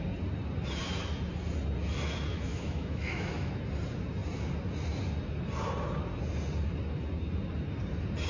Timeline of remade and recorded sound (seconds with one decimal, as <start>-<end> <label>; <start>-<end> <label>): 0.0-2.3 recorded; 2.3-3.5 remade; 3.5-8.3 recorded